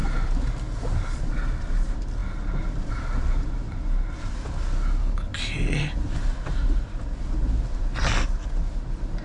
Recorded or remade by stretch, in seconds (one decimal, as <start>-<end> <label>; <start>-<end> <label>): 0.0-9.2 recorded